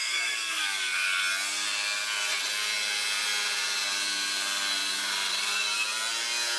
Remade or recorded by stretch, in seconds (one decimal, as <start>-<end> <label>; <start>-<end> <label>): 0.0-1.2 remade; 1.2-6.6 recorded